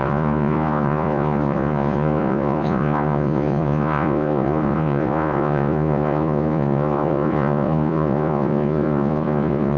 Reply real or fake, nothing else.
fake